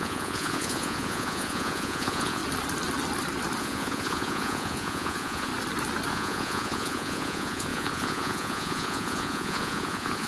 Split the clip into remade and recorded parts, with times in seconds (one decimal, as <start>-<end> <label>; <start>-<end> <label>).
0.0-2.4 remade; 2.4-3.6 recorded; 3.6-5.5 remade; 5.5-6.1 recorded; 6.1-10.3 remade